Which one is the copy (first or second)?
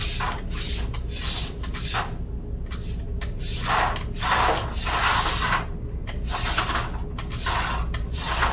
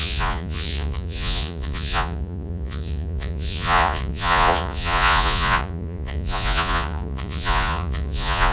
second